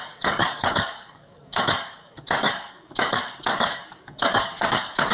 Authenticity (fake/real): fake